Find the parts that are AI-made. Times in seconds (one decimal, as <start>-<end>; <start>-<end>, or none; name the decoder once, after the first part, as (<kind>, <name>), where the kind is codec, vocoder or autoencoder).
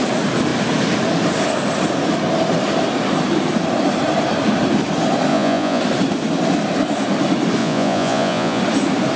5.3-5.8 (vocoder, Vocos); 7.6-8.6